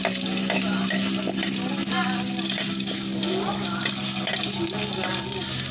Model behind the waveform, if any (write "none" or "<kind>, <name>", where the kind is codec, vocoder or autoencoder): none